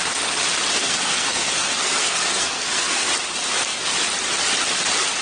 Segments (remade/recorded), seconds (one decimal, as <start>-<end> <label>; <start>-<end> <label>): 0.0-0.8 recorded; 0.8-3.1 remade; 3.1-5.2 recorded